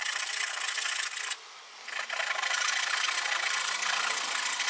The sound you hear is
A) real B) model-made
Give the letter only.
A